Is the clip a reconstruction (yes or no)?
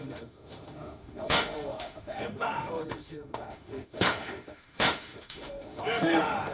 yes